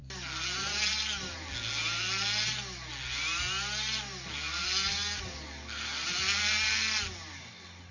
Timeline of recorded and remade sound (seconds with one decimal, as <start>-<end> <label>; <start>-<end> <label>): 0.0-7.9 recorded